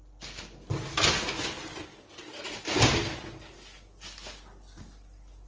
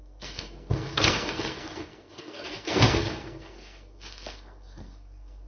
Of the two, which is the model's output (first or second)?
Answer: second